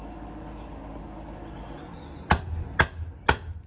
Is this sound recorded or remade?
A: recorded